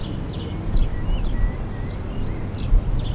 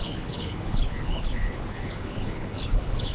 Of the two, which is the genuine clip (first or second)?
first